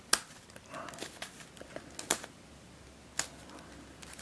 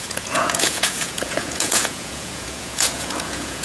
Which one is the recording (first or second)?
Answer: first